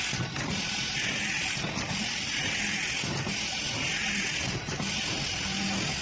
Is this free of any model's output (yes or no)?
yes